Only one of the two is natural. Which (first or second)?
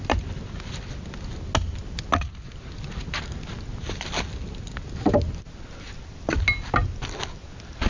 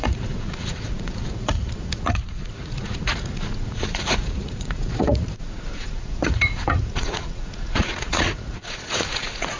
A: first